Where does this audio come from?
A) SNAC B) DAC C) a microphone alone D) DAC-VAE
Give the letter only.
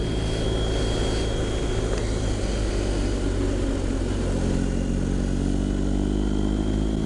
C